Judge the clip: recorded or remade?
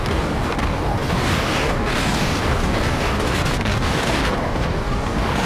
remade